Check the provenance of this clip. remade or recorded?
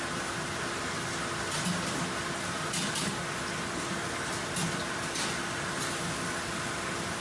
recorded